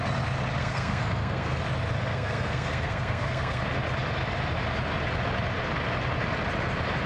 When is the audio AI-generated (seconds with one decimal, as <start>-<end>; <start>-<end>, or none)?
0.6-1.6; 2.1-3.6